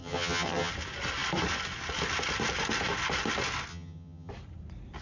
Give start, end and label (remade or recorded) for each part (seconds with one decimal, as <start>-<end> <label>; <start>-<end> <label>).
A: 0.0-0.7 remade; 0.7-3.7 recorded; 3.7-4.3 remade; 4.3-5.0 recorded